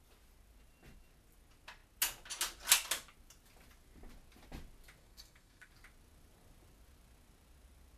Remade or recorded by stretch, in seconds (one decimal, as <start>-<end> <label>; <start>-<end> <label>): 0.0-5.0 recorded; 5.0-5.7 remade; 5.7-8.0 recorded